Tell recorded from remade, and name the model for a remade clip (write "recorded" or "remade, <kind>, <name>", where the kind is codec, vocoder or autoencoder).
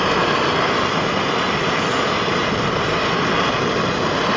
recorded